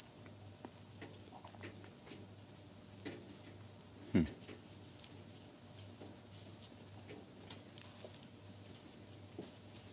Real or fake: real